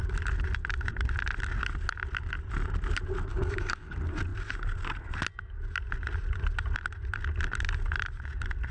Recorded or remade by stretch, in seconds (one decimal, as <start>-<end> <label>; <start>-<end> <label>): 0.0-3.3 recorded; 3.3-3.9 remade; 3.9-8.7 recorded